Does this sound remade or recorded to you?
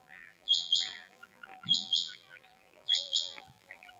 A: remade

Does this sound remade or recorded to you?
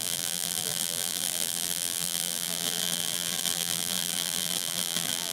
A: remade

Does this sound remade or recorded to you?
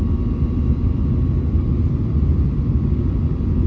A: remade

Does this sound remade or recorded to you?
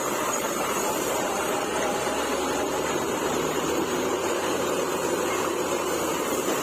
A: remade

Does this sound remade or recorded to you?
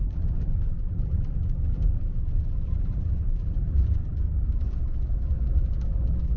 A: remade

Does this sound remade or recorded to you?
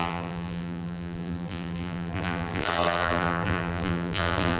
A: remade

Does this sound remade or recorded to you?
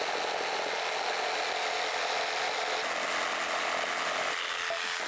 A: recorded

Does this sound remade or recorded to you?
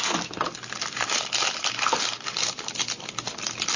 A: recorded